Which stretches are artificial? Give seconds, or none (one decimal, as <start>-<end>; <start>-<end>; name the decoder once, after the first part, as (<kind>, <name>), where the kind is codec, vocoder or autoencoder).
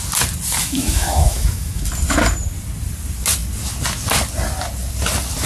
0.6-1.8 (autoencoder, DAC-VAE)